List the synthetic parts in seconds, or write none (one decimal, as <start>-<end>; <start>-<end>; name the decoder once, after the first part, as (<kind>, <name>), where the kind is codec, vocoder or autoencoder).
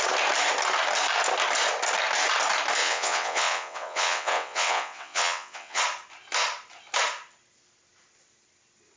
2.8-5.8 (vocoder, WaveNeXt)